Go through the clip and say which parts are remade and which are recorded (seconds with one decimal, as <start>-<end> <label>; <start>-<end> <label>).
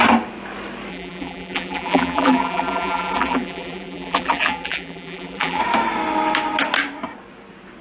0.0-0.9 recorded; 0.9-5.6 remade; 5.6-7.8 recorded